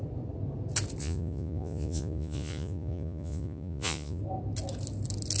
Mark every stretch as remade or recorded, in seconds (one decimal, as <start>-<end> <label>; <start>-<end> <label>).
0.0-1.0 recorded; 1.0-4.2 remade; 4.2-5.4 recorded